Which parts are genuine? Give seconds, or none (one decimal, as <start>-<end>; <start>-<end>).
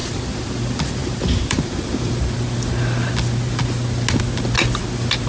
2.1-5.3